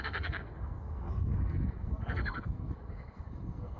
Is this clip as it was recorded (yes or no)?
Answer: no